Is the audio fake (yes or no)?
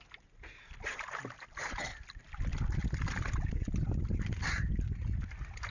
no